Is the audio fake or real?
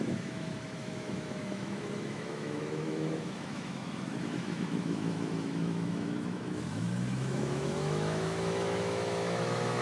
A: fake